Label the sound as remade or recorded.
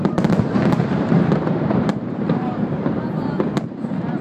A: remade